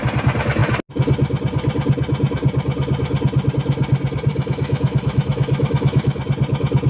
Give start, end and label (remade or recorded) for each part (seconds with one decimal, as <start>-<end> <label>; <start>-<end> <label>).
0.0-4.3 recorded; 4.3-6.2 remade; 6.2-6.9 recorded